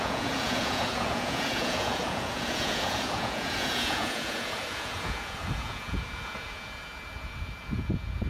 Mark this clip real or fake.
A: fake